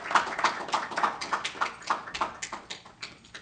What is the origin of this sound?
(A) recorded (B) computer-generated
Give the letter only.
A